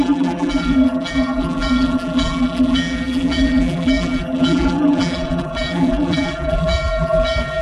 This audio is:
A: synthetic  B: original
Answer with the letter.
A